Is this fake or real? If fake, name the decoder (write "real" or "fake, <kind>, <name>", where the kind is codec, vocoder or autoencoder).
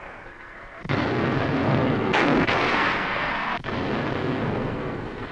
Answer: fake, codec, SNAC